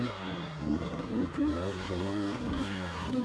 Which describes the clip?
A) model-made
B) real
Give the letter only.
A